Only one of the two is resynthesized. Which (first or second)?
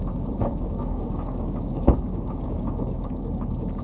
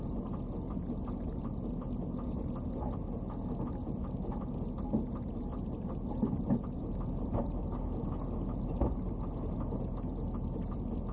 first